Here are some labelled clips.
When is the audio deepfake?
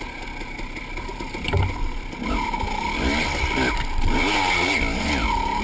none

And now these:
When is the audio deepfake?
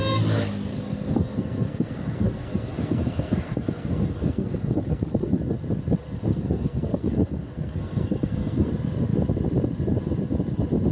0.7-5.4 (codec, SNAC); 6.3-8.7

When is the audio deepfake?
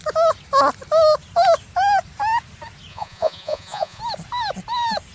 2.9-4.0 (vocoder, Vocos)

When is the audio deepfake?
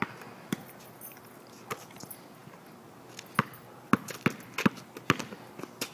0.0-2.4 (vocoder, BigVGAN v2); 5.5-5.9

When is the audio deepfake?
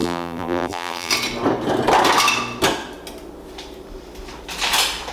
0.0-1.1 (vocoder, BigVGAN v2)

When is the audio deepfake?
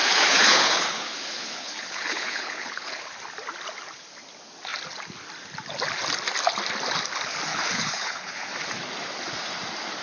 0.0-3.0 (codec, HILCodec); 7.5-8.5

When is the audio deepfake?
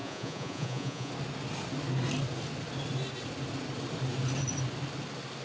0.0-1.1 (vocoder, Vocos)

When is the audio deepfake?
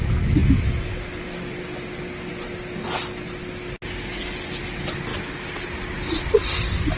none